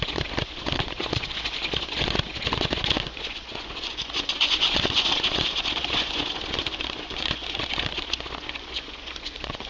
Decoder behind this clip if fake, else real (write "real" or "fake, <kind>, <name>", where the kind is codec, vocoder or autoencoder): fake, vocoder, Vocos